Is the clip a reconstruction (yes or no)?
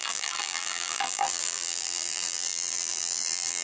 yes